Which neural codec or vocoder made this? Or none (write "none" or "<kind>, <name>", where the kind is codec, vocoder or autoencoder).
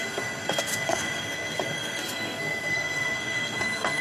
codec, SNAC